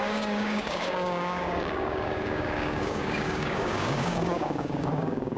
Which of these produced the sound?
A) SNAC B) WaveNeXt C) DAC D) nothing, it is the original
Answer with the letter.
C